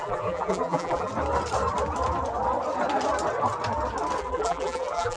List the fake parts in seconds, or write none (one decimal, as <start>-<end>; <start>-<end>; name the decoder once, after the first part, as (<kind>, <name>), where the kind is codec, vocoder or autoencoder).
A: 0.0-1.1 (vocoder, BigVGAN v2); 4.2-5.2